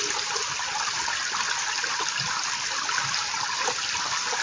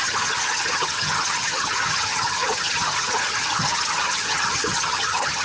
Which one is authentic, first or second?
first